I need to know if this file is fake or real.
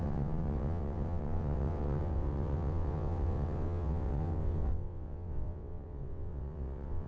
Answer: fake